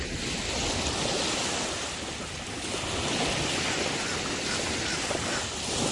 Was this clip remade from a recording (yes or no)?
no